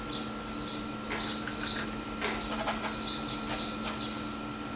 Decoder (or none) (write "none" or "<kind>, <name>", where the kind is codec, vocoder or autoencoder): none